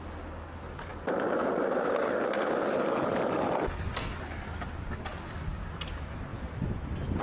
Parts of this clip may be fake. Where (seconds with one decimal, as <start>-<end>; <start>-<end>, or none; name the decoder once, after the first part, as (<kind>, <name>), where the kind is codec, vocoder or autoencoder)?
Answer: none